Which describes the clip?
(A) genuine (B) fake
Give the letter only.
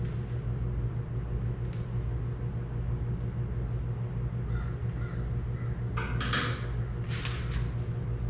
A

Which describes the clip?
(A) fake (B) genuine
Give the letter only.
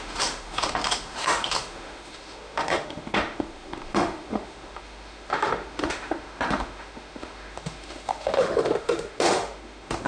A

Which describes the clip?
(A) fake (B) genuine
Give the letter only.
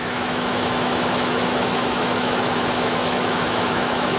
A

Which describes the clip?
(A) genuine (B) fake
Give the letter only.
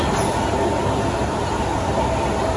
A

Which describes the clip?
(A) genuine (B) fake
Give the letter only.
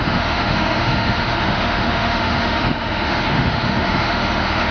B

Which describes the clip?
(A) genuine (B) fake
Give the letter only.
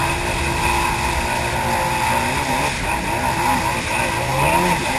A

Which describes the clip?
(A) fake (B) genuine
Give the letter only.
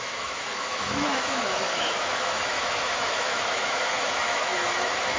A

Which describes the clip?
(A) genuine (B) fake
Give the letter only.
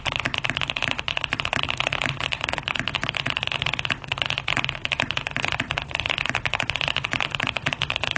A